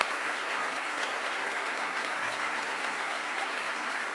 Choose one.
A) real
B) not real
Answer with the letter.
B